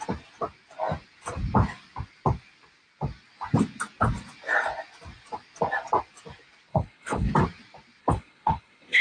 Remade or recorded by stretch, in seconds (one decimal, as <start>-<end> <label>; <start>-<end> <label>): 0.0-6.7 recorded; 6.7-7.3 remade; 7.3-8.0 recorded; 8.0-9.0 remade